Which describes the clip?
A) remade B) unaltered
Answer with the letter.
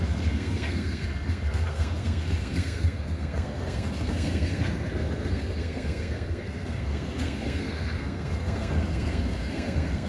A